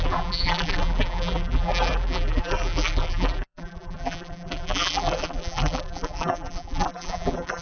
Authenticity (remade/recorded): remade